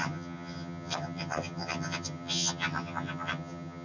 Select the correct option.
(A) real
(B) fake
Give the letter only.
B